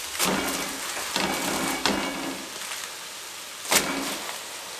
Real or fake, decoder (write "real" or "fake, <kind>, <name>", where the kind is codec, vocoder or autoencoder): real